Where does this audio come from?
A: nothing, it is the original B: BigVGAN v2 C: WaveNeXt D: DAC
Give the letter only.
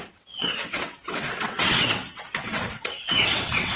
C